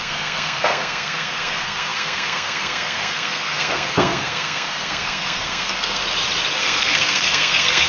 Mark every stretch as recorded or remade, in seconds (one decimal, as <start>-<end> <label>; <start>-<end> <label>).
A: 0.0-6.0 remade; 6.0-6.6 recorded; 6.6-7.9 remade